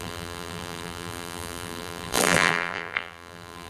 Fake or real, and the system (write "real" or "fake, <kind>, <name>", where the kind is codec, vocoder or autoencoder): fake, vocoder, BigVGAN v2